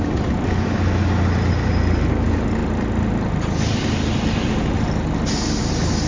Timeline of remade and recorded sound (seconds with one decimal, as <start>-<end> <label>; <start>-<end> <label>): 0.0-6.1 recorded